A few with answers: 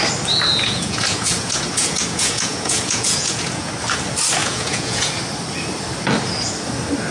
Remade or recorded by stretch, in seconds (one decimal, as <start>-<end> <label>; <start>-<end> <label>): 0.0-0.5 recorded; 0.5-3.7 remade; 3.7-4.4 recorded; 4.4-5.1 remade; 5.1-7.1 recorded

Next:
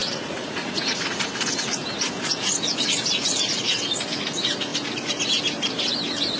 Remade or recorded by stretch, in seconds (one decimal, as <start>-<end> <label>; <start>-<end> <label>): 0.0-1.0 remade; 1.0-6.4 recorded

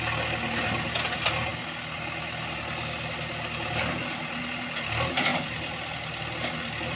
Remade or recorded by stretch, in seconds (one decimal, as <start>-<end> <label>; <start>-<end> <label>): 0.0-7.0 recorded